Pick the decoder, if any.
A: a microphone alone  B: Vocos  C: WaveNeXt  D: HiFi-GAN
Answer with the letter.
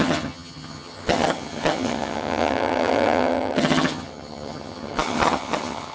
D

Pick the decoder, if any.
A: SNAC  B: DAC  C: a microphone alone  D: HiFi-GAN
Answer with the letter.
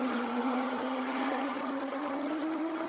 D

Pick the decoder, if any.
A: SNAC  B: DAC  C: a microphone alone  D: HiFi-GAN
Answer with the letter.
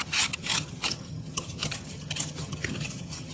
D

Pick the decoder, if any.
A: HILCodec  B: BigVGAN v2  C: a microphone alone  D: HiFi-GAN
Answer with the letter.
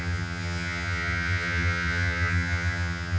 D